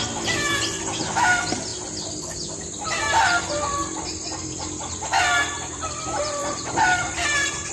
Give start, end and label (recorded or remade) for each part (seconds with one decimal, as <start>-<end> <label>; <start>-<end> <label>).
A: 0.0-6.4 recorded; 6.4-7.7 remade